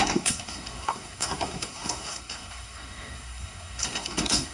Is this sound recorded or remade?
remade